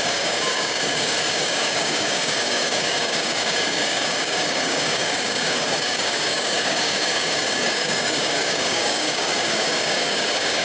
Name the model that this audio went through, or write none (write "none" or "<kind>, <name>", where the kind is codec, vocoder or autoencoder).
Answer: codec, DAC